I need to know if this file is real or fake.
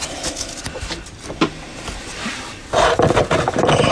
real